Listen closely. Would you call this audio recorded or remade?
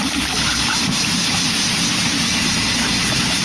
recorded